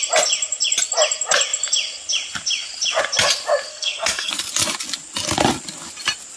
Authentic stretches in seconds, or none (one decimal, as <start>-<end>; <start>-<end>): 0.0-3.7; 4.3-6.4